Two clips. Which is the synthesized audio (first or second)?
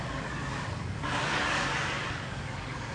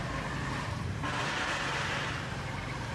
first